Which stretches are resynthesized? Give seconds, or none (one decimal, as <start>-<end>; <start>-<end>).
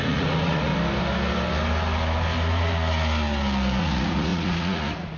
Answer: 0.0-0.7; 3.8-5.2